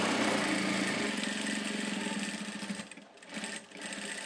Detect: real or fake real